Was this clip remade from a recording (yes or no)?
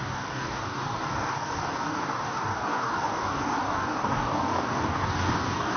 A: yes